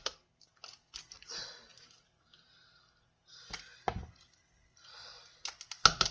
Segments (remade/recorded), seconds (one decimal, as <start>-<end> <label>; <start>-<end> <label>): 0.0-6.1 recorded